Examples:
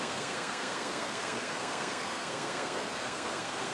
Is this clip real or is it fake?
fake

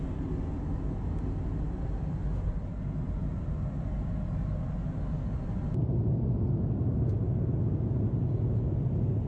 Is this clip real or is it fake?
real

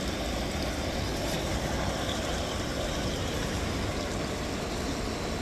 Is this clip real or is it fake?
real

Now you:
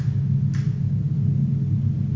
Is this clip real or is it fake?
real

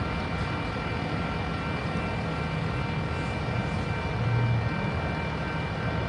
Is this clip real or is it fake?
real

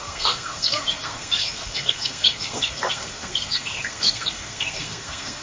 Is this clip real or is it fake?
fake